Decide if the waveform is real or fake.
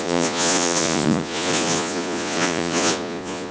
fake